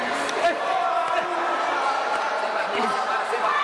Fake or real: real